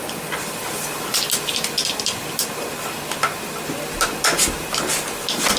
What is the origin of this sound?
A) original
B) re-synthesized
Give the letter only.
A